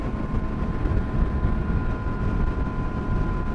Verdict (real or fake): real